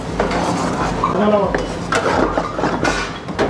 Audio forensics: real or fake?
real